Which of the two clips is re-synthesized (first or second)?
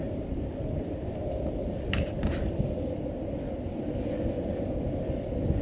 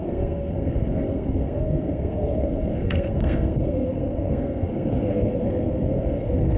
second